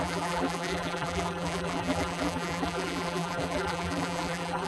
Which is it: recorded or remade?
remade